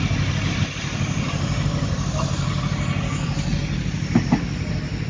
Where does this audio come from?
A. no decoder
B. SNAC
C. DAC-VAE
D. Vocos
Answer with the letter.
A